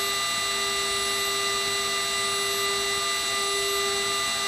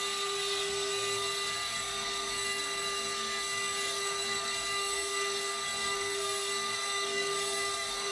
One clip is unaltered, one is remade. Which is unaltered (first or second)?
first